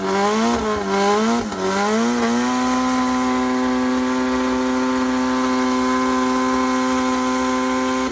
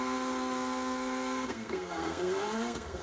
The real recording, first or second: first